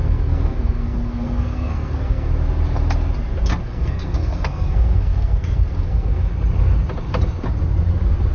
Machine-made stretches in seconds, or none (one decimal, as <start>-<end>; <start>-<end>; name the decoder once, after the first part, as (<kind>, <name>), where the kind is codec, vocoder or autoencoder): 0.0-2.3 (codec, SNAC); 3.6-6.3